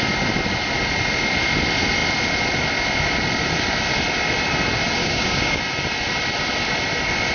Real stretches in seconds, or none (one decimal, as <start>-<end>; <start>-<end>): 0.0-5.0; 5.6-7.3